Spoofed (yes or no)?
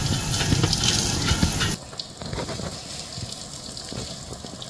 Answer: no